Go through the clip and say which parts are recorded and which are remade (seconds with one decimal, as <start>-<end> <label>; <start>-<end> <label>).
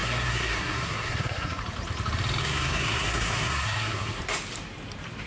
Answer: 0.0-1.6 remade; 1.6-2.4 recorded; 2.4-4.2 remade; 4.2-5.3 recorded